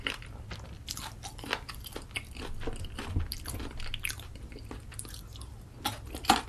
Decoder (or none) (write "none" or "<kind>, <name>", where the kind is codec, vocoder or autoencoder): none